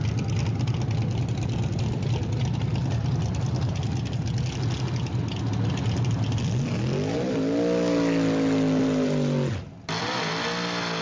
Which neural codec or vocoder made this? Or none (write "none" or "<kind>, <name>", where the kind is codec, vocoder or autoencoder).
none